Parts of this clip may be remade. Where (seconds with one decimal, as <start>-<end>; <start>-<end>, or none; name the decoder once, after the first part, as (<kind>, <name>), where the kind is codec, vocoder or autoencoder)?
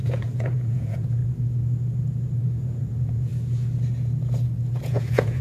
0.0-1.2 (vocoder, Vocos); 2.4-3.3; 4.8-5.4